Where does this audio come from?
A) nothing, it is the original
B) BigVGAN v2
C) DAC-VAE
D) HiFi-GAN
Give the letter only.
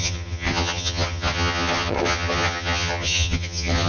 D